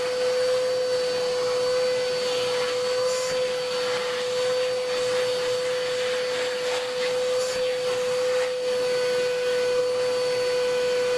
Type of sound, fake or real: real